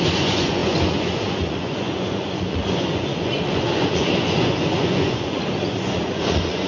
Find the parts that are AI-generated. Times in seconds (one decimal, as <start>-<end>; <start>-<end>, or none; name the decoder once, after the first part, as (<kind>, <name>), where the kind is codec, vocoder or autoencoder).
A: 0.0-6.7 (vocoder, Vocos)